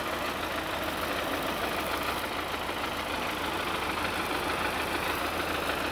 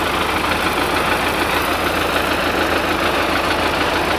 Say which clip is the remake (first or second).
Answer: first